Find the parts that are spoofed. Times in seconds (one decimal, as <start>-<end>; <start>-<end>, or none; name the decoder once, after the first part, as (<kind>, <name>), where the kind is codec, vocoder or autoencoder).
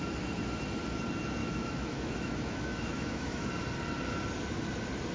1.4-3.5 (autoencoder, DAC-VAE)